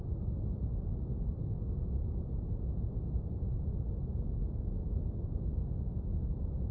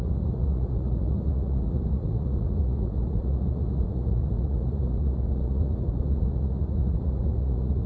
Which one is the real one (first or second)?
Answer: first